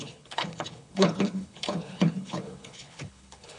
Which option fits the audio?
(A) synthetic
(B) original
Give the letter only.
A